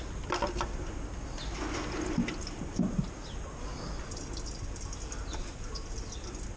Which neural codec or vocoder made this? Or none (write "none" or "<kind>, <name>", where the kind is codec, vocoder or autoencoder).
none